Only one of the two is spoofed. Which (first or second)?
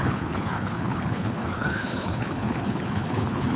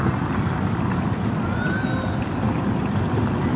first